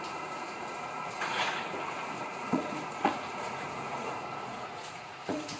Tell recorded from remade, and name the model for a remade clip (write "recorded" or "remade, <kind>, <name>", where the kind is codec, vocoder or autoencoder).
remade, vocoder, Vocos